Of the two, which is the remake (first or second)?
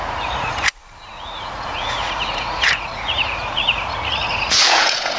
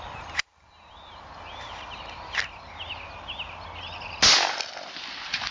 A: first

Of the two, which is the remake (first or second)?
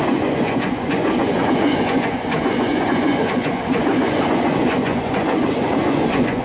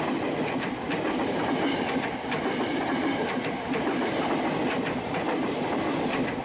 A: first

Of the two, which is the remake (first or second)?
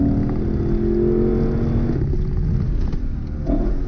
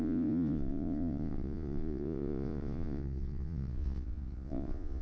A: second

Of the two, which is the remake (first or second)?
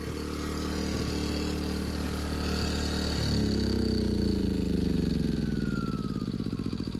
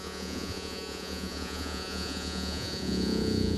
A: second